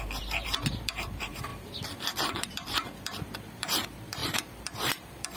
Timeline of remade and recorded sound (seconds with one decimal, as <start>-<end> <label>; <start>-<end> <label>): 0.0-1.5 remade; 1.5-2.3 recorded; 2.3-5.4 remade

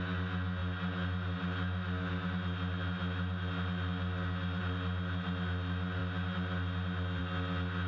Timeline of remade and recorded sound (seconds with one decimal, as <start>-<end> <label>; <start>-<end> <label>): 0.0-7.9 recorded

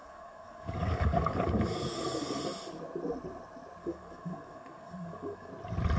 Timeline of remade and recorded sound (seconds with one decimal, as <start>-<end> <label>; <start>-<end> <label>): 0.0-2.4 remade; 2.4-3.8 recorded; 3.8-5.5 remade; 5.5-6.0 recorded

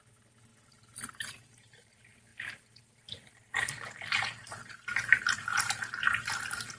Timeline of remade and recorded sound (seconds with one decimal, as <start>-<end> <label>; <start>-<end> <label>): 0.0-6.8 recorded